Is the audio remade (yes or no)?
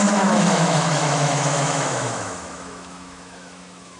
yes